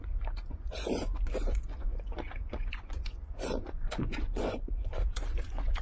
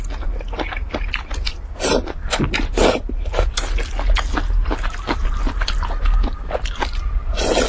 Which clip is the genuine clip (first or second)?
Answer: second